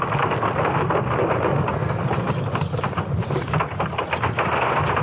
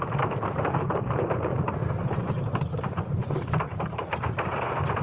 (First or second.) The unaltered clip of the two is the first